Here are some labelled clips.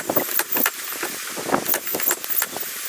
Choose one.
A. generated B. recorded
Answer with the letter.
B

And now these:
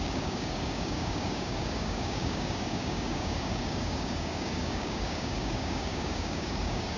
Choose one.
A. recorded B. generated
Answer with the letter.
B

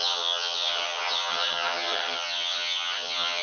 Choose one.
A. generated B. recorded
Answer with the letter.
A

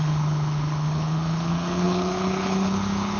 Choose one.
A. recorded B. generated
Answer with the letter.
B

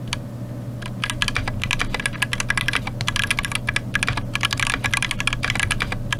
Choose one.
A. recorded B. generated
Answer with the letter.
A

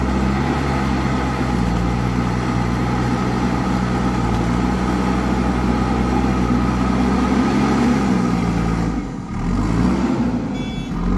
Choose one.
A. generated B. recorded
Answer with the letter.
B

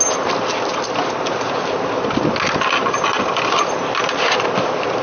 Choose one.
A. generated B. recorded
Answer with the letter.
B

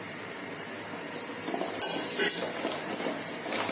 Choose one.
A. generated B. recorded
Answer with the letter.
B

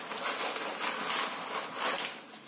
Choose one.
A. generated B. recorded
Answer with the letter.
B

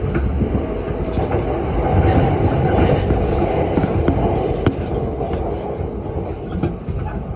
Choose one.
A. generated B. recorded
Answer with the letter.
B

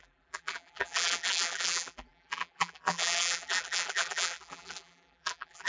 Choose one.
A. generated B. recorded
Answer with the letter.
A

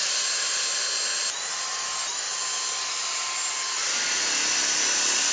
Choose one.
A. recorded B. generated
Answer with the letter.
A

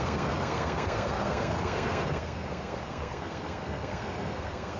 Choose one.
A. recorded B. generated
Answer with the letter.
B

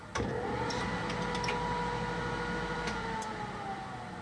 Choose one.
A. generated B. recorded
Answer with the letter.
A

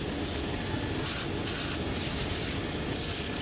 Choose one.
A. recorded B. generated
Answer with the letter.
A